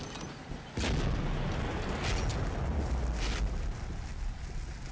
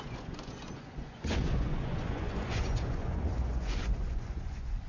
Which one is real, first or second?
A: first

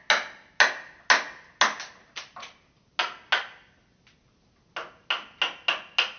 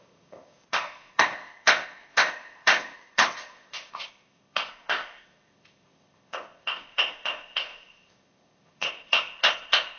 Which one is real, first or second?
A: first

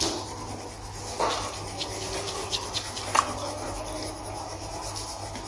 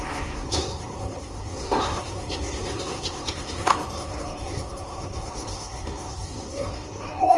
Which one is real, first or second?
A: first